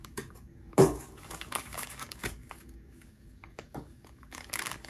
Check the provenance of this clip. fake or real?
fake